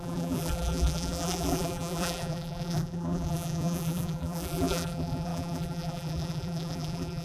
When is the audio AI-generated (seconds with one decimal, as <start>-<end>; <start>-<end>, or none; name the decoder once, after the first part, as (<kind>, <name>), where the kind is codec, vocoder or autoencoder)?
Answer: 0.0-7.2 (vocoder, BigVGAN v2)